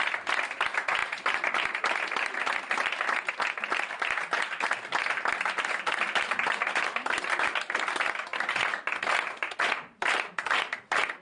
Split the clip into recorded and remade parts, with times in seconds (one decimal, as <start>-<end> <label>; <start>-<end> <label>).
0.0-11.2 recorded